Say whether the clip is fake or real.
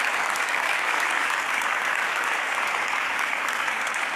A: fake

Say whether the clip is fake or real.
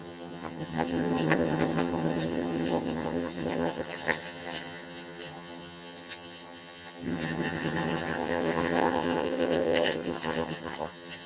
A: fake